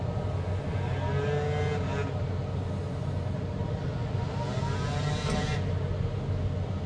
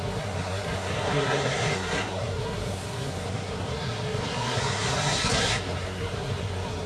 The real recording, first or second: first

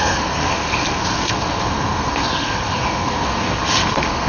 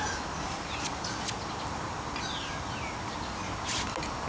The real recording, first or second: second